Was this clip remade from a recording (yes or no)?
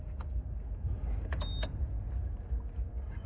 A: no